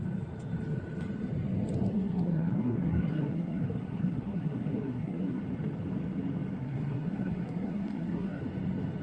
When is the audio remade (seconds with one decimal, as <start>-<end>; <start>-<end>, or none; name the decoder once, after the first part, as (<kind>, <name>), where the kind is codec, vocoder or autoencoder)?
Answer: 1.9-5.4 (codec, SNAC); 6.6-8.4